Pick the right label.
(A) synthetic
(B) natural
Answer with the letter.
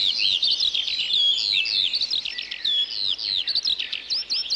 B